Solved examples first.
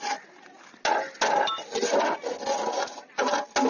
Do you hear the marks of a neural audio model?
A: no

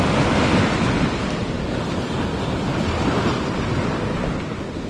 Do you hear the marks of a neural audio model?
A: no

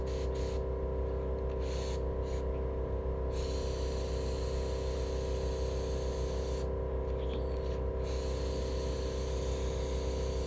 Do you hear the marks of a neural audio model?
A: no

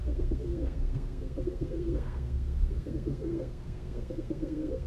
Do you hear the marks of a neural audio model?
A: yes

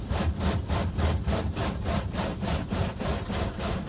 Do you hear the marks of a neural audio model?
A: no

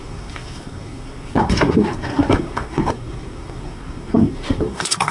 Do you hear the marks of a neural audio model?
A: yes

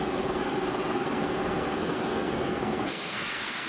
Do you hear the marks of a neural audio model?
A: yes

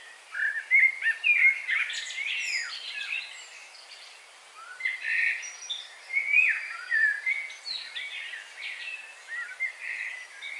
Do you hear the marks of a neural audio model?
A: no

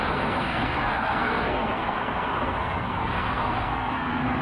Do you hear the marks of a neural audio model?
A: yes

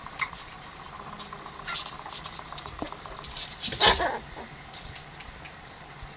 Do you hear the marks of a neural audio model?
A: no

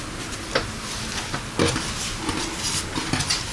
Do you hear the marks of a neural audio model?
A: no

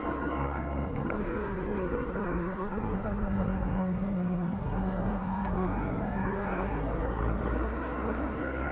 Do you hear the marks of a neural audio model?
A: yes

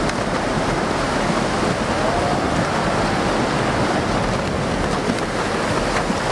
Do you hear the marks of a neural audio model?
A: no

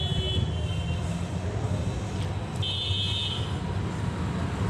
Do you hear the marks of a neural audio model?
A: no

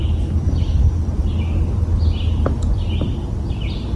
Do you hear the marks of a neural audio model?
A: no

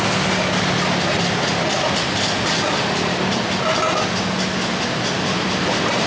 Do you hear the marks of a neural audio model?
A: no